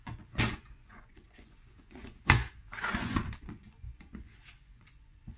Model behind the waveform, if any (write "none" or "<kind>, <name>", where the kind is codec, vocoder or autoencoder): vocoder, Vocos